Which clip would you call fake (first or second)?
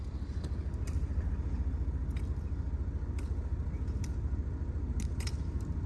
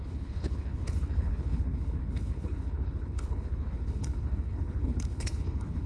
second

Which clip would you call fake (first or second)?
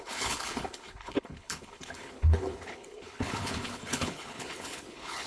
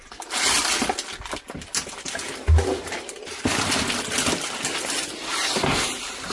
first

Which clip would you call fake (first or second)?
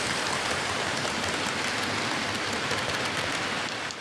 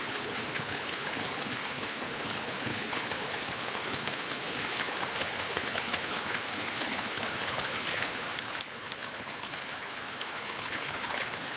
second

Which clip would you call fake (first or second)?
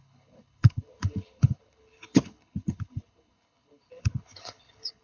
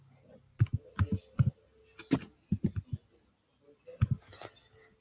first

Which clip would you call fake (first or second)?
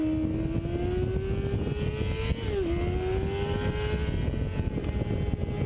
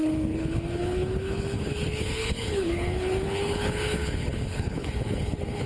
second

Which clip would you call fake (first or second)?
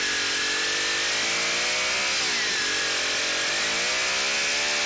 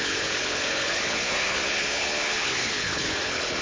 second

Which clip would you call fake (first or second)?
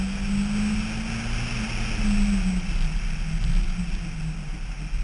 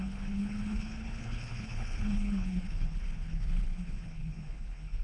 second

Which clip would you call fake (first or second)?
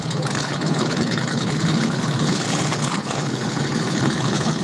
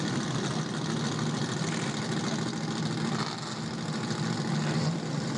first